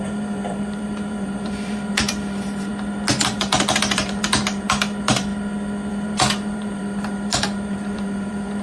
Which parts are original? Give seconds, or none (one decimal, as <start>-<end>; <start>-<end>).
2.7-3.3; 5.3-5.9